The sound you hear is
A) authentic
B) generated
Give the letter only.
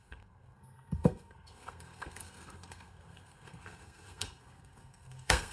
B